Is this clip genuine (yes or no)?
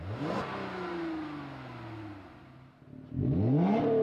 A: yes